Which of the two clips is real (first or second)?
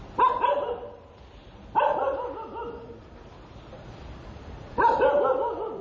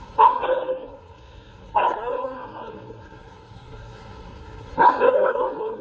first